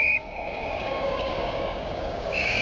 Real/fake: fake